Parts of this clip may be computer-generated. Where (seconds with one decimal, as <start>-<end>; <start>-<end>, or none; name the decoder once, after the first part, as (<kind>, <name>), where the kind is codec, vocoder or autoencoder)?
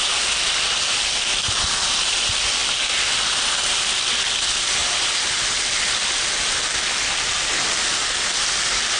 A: 4.8-5.6 (vocoder, BigVGAN v2)